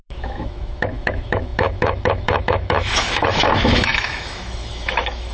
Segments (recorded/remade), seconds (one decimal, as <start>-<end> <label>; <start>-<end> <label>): 0.0-5.3 remade

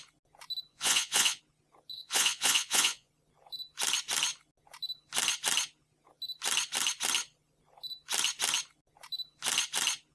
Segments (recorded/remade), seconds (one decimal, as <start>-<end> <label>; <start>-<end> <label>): 0.0-0.7 recorded; 0.7-1.4 remade; 1.4-1.9 recorded; 1.9-3.1 remade; 3.1-10.1 recorded

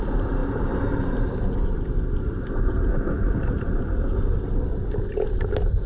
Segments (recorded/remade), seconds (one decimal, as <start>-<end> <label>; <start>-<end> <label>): 0.0-5.9 recorded